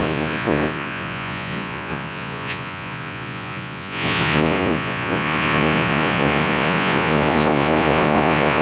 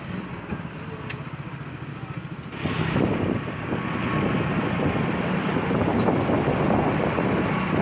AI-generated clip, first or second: first